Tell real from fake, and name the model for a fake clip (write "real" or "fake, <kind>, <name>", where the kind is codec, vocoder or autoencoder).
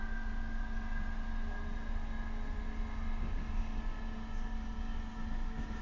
real